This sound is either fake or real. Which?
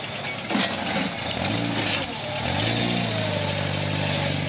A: real